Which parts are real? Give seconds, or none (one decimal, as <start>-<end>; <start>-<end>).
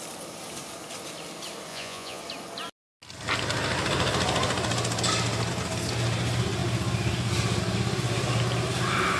0.0-1.7; 2.2-9.2